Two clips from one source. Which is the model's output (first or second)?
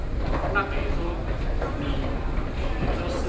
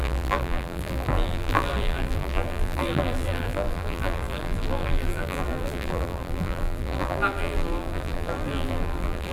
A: second